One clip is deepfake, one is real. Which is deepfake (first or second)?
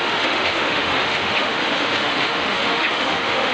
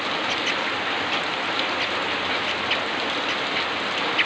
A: first